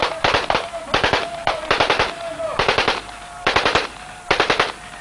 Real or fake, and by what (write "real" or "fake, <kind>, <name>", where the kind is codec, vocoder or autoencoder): fake, vocoder, BigVGAN v2